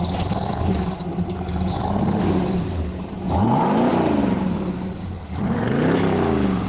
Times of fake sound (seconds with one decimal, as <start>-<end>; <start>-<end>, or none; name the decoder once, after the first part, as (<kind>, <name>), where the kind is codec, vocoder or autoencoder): 4.2-5.4 (vocoder, BigVGAN v2)